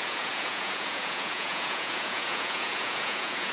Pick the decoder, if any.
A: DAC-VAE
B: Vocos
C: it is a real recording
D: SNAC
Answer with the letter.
B